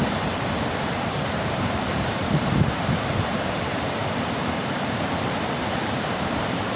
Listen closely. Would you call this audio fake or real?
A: fake